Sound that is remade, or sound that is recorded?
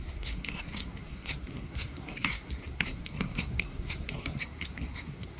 remade